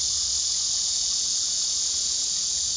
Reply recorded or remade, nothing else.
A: remade